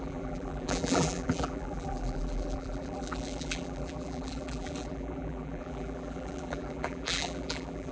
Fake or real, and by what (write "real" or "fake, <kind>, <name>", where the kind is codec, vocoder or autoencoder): fake, vocoder, BigVGAN v2